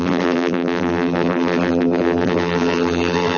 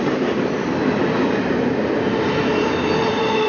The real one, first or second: second